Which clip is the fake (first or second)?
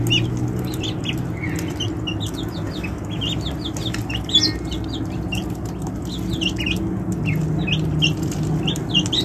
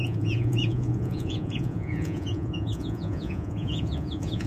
second